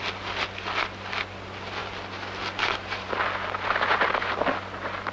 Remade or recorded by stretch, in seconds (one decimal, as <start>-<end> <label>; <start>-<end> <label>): 0.0-5.1 recorded